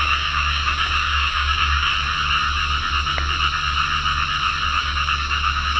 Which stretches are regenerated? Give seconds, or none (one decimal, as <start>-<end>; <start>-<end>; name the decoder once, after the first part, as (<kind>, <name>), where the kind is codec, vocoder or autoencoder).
0.0-1.9 (codec, DAC); 4.8-5.8

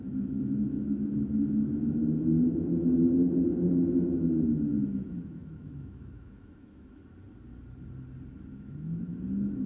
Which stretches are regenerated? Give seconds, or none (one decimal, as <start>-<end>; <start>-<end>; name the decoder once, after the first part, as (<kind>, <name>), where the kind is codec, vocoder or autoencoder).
0.0-7.0 (autoencoder, DAC-VAE); 8.5-9.1

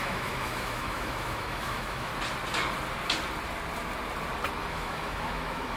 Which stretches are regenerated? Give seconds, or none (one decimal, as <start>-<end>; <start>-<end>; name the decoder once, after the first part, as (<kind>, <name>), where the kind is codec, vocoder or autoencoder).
0.0-2.1 (autoencoder, DAC-VAE); 4.7-5.8

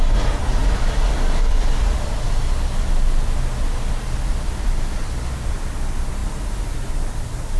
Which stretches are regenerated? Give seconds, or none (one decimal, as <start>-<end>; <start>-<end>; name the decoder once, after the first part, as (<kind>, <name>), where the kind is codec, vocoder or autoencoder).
none